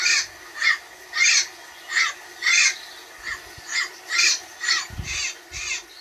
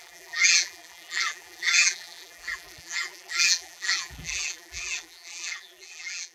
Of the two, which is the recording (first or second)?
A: first